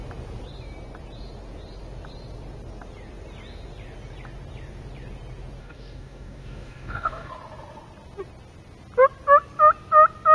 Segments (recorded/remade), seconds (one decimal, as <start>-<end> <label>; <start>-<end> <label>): 0.0-5.6 recorded; 5.6-7.3 remade; 7.3-10.3 recorded